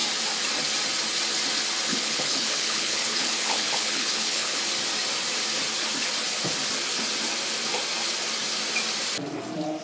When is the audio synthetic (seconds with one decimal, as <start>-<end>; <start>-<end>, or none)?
1.9-4.6